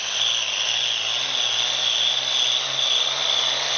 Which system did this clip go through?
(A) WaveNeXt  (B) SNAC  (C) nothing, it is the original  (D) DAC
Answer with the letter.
C